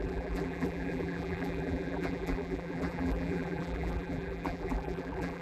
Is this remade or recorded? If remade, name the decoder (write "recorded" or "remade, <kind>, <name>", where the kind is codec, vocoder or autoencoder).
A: remade, vocoder, BigVGAN v2